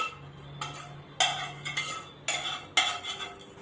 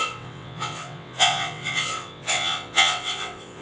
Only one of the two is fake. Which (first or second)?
second